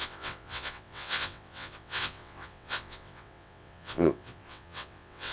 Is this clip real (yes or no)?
no